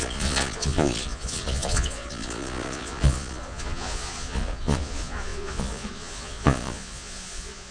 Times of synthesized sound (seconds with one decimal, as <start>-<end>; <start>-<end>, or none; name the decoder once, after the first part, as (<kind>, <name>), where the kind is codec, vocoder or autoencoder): 0.0-7.7 (vocoder, Vocos)